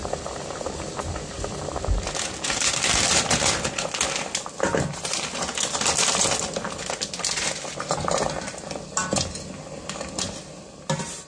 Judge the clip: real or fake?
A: real